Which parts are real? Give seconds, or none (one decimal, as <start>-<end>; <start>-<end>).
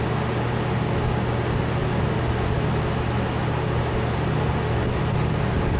0.0-5.8